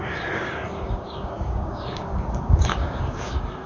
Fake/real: fake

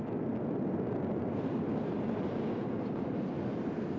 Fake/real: real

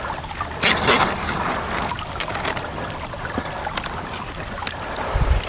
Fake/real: real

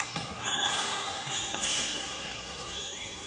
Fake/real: fake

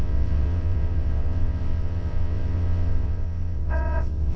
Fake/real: fake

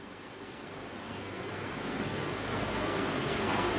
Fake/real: fake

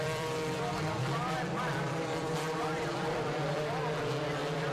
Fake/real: fake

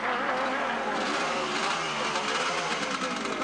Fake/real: real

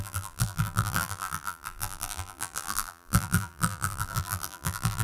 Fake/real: fake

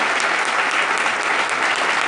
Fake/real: real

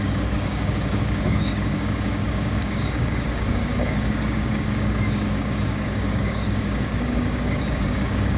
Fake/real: fake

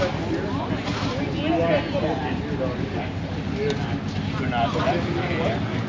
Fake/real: real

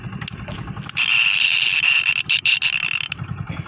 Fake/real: real